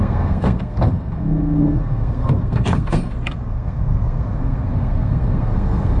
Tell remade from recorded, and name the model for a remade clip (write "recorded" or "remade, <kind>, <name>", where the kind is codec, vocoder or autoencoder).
remade, codec, SNAC